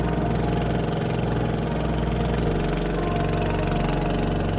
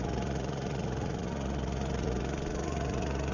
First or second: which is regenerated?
second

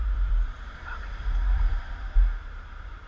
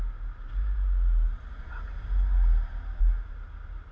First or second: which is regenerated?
first